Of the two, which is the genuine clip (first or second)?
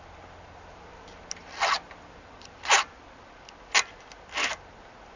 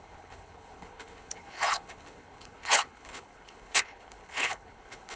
first